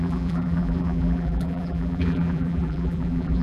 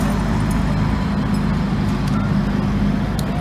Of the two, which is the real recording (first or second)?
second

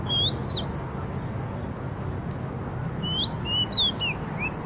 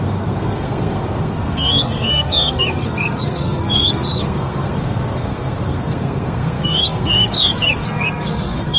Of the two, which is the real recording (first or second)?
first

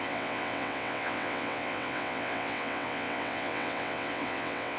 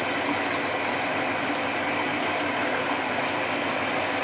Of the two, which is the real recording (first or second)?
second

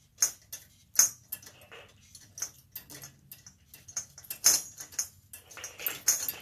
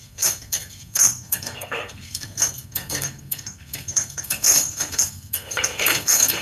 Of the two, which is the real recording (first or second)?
first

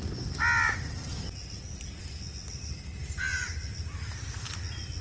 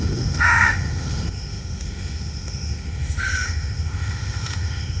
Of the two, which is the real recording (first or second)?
first